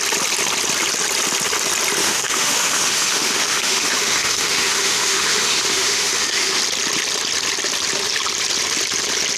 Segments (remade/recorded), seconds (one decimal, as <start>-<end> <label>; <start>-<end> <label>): 0.0-2.0 recorded; 2.0-6.6 remade; 6.6-9.4 recorded